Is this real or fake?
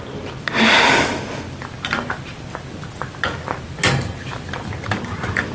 real